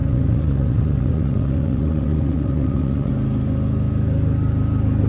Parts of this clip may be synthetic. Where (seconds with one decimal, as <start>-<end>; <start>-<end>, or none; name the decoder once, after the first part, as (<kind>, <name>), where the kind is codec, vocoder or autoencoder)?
0.0-3.1 (vocoder, WaveNeXt)